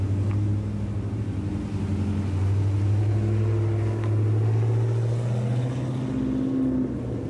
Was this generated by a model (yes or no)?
no